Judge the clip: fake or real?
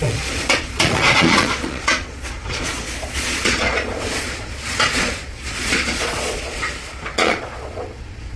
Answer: fake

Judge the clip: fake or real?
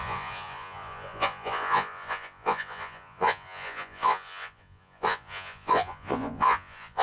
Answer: fake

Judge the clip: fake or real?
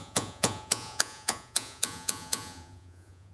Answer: fake